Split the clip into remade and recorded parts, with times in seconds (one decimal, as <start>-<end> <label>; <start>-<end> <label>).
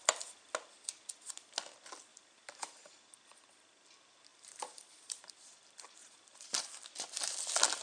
0.0-2.1 recorded; 2.1-3.0 remade; 3.0-4.3 recorded; 4.3-5.2 remade; 5.2-6.0 recorded; 6.0-6.6 remade; 6.6-7.8 recorded